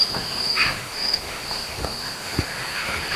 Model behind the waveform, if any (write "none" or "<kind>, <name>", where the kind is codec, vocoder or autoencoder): autoencoder, DAC-VAE